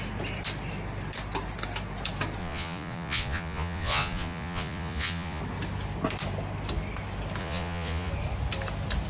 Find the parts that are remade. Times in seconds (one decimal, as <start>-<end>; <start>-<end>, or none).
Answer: 2.4-5.4; 7.4-8.1